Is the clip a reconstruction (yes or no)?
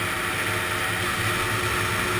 no